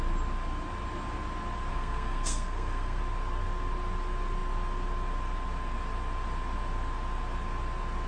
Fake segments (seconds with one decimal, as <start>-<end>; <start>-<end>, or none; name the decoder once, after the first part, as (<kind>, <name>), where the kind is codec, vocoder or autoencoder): 1.7-3.0 (codec, SNAC)

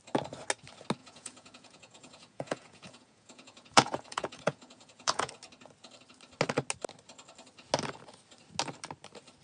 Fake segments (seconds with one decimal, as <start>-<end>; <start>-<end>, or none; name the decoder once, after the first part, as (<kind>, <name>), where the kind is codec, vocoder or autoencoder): 1.0-5.3 (vocoder, Vocos)

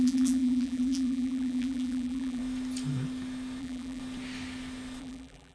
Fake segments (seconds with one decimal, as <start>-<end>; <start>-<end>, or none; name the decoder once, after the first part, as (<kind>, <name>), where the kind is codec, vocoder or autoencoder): 0.0-2.4 (vocoder, BigVGAN v2); 3.6-4.0; 5.0-5.5

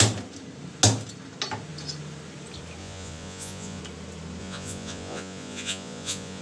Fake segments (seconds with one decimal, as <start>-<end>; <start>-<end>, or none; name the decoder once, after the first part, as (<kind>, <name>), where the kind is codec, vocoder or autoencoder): 2.8-3.8 (vocoder, Vocos); 4.4-6.4

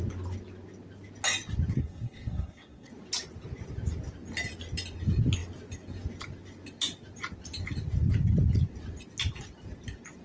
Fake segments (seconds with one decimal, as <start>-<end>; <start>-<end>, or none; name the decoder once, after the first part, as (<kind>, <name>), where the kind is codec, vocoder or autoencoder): 1.8-2.9 (codec, SNAC)

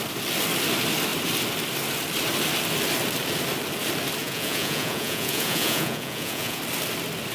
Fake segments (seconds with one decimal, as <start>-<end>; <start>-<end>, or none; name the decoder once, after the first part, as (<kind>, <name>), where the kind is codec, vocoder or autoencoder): 4.2-6.6 (vocoder, Vocos)

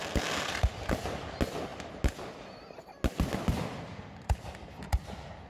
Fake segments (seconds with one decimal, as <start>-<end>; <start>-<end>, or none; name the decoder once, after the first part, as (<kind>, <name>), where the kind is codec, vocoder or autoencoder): none